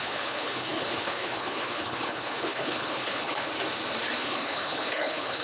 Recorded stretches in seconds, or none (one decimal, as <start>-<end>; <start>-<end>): 3.5-4.2